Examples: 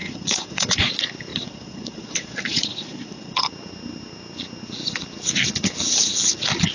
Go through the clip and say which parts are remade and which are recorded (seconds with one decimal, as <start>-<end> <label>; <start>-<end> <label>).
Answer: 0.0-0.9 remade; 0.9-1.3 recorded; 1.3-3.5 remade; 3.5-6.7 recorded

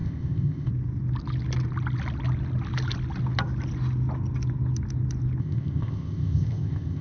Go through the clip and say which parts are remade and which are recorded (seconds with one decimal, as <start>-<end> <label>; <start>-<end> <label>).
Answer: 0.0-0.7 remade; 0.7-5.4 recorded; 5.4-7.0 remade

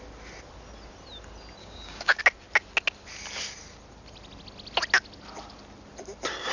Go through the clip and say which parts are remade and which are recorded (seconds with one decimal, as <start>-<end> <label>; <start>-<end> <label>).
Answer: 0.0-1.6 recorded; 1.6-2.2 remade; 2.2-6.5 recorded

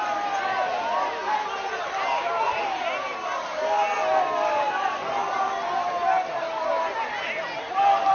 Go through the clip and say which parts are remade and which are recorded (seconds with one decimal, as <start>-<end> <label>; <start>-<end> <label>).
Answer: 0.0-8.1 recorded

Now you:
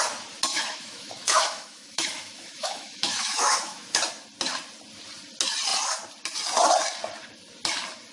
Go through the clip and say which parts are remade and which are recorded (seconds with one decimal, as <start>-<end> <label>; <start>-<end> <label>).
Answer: 0.0-0.5 recorded; 0.5-4.0 remade; 4.0-8.1 recorded